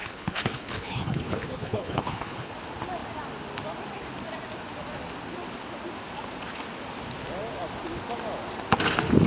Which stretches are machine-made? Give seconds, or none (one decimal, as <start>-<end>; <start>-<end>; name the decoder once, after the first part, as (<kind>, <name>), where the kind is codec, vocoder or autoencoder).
0.0-2.5 (codec, HILCodec)